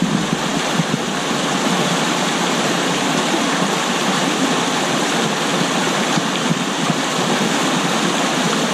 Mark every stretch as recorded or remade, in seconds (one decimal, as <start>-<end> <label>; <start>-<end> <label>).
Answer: 0.0-5.5 remade; 5.5-6.2 recorded; 6.2-8.7 remade